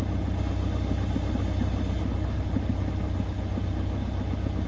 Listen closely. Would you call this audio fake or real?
real